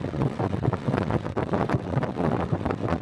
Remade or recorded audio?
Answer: remade